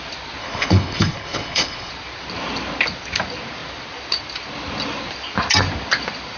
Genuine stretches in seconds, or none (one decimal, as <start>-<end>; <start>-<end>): 0.0-0.4; 1.9-6.4